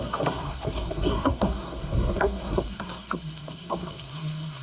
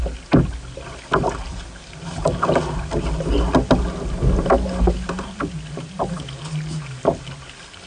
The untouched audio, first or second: second